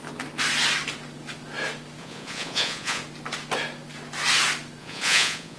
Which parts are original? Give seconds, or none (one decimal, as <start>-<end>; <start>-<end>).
0.0-2.0; 3.0-4.8